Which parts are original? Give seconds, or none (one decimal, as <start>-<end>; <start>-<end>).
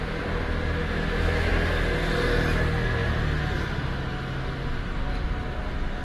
0.0-0.8; 1.5-6.0